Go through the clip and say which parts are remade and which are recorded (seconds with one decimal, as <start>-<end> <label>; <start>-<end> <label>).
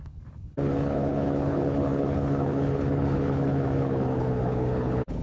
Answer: 0.0-5.2 remade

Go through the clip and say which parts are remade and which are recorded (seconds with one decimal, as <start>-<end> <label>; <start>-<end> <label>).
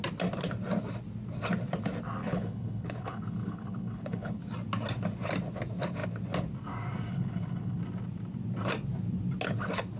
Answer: 0.0-2.2 recorded; 2.2-4.4 remade; 4.4-7.1 recorded; 7.1-7.8 remade; 7.8-10.0 recorded